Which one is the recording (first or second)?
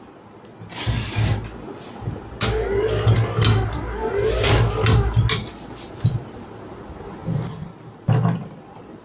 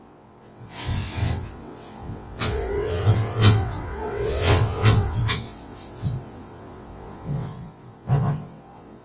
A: first